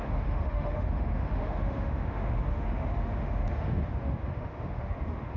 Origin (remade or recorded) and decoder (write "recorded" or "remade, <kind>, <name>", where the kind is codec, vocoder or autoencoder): remade, autoencoder, DAC-VAE